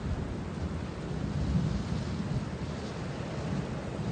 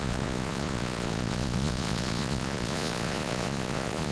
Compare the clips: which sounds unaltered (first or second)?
first